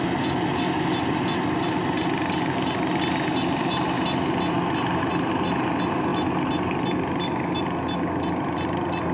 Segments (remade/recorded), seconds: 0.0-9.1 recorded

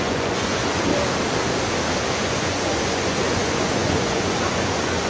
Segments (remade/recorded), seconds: 0.0-0.9 remade; 0.9-2.1 recorded; 2.1-5.1 remade

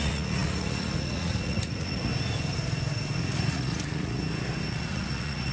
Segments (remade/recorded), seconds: 0.0-2.1 remade; 2.1-3.5 recorded; 3.5-4.2 remade; 4.2-4.7 recorded; 4.7-5.5 remade